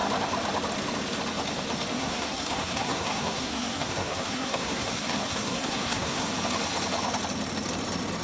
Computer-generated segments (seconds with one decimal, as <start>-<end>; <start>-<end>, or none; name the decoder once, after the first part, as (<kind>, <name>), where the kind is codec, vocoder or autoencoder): 1.9-6.3 (codec, SNAC)